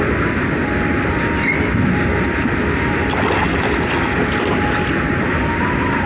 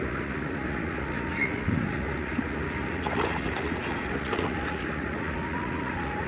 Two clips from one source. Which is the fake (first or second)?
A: second